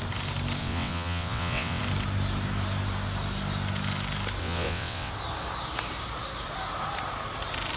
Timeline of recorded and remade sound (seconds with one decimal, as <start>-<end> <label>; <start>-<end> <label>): 0.0-0.6 recorded; 0.6-1.8 remade; 1.8-4.4 recorded; 4.4-5.1 remade; 5.1-7.8 recorded